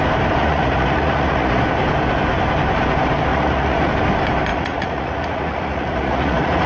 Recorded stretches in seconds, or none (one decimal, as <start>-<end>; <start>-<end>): 0.0-0.4; 1.6-3.3; 3.9-4.5